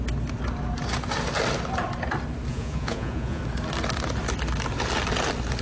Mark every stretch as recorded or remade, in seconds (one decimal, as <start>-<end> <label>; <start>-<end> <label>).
0.0-2.5 recorded; 2.5-3.4 remade; 3.4-5.6 recorded